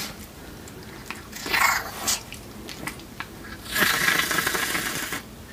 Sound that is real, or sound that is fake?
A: real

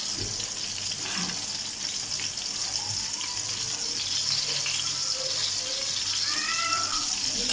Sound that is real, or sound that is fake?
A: real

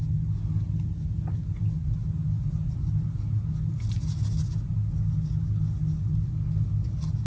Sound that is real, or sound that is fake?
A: real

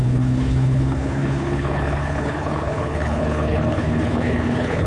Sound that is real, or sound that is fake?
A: fake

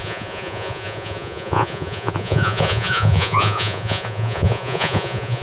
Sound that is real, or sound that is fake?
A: fake